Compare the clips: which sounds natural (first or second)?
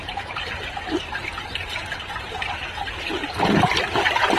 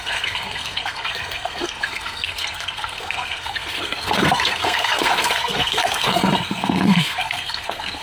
first